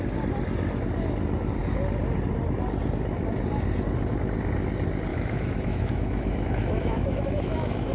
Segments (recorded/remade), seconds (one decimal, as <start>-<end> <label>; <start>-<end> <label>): 0.0-5.1 recorded; 5.1-7.9 remade